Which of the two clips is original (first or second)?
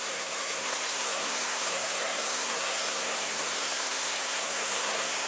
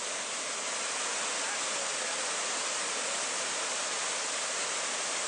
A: second